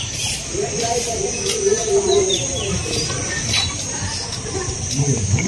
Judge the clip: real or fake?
real